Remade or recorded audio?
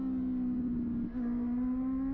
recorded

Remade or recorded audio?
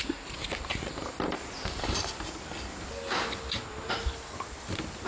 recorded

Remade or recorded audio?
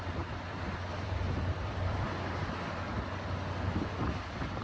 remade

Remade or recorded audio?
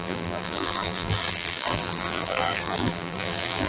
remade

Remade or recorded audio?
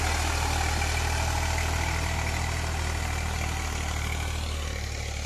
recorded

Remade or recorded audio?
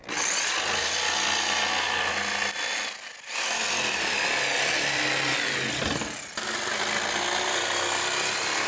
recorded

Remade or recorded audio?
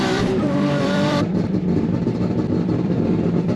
remade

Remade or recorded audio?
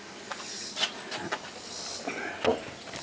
recorded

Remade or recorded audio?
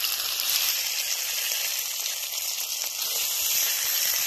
remade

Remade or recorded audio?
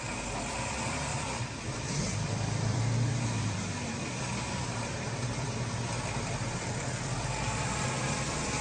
remade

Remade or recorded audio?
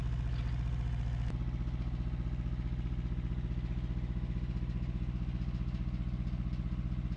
recorded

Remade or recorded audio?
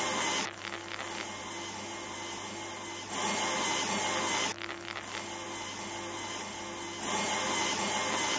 recorded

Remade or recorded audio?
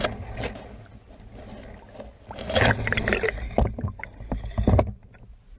recorded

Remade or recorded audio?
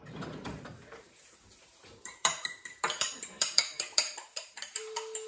remade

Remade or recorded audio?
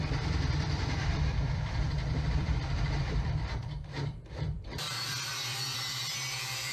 remade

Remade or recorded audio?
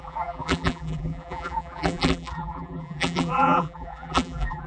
remade